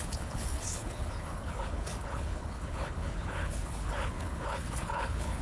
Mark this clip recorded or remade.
remade